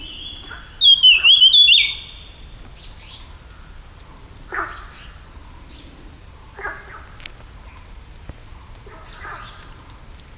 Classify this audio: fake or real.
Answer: real